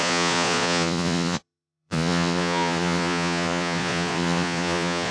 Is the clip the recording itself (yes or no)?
no